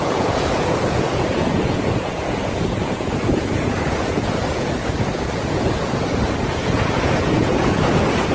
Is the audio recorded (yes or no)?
no